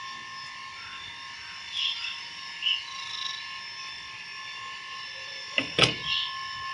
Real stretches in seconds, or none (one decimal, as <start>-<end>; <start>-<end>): 0.0-6.7